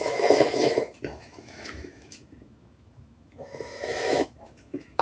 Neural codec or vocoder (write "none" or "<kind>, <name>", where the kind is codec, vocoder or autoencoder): autoencoder, DAC-VAE